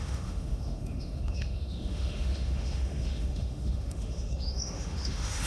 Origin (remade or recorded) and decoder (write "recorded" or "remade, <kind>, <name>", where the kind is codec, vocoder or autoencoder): remade, autoencoder, DAC-VAE